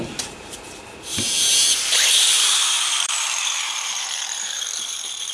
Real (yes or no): no